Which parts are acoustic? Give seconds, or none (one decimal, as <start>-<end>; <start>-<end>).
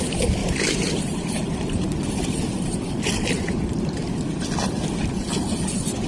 0.0-0.4; 2.5-4.0; 4.5-6.1